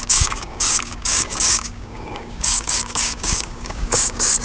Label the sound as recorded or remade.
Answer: remade